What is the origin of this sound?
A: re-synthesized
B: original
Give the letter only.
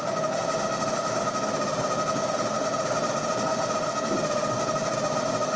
B